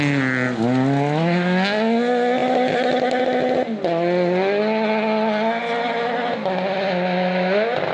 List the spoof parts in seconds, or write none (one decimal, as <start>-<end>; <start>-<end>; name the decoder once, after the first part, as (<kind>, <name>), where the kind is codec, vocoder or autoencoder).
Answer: none